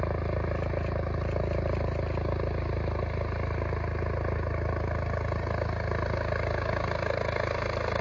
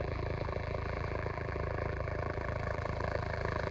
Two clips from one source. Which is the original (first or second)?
first